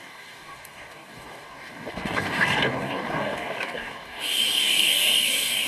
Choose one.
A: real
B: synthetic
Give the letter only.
B